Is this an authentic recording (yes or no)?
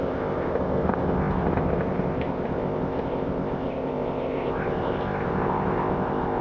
no